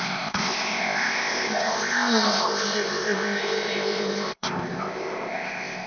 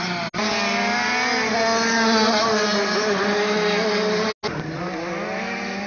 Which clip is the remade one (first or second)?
first